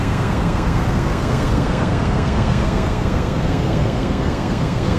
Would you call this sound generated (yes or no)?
yes